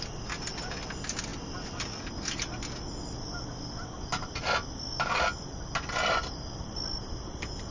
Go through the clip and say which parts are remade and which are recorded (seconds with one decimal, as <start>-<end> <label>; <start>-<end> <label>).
0.0-7.7 recorded